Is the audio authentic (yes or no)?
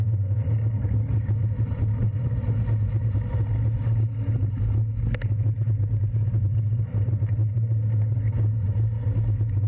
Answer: yes